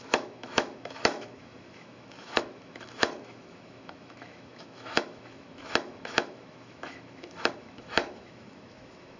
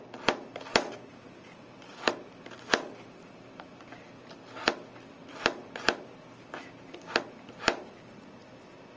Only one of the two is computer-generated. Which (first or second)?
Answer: first